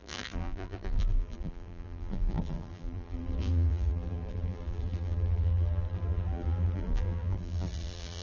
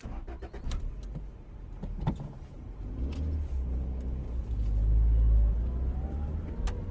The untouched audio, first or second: second